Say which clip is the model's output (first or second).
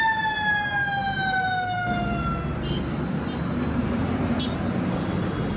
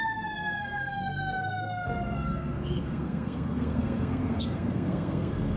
second